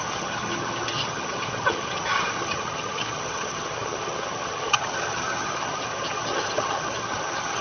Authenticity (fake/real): fake